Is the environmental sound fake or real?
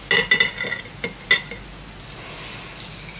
real